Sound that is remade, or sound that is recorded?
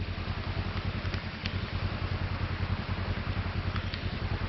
recorded